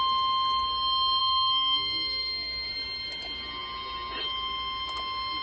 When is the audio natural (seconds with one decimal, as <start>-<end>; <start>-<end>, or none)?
0.0-1.2; 2.7-5.4